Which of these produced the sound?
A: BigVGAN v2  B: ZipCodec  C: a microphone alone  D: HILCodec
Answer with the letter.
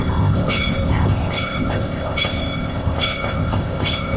B